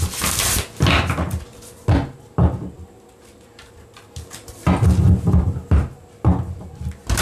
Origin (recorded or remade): recorded